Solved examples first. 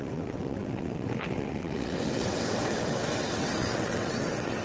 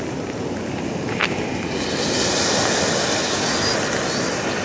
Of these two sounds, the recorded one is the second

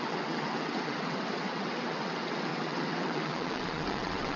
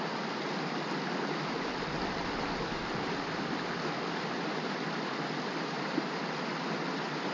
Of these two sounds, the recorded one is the second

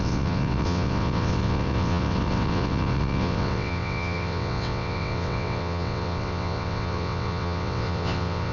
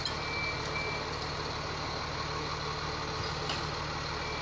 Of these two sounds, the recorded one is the second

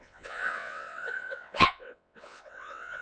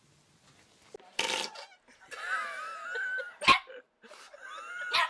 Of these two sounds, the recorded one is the second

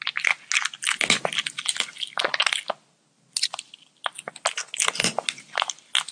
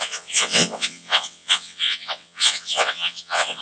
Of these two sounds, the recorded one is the first